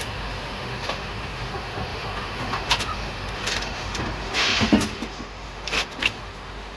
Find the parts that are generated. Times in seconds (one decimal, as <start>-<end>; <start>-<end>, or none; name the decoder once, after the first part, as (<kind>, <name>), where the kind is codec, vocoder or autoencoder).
0.0-6.8 (autoencoder, DAC-VAE)